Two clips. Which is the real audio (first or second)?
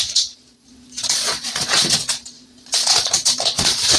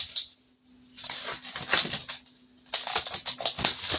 second